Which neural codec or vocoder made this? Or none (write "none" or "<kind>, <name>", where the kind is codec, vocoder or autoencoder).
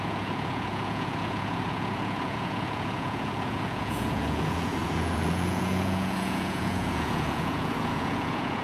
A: vocoder, Vocos